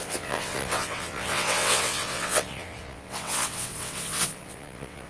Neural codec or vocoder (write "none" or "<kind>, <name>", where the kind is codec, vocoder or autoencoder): vocoder, WaveNeXt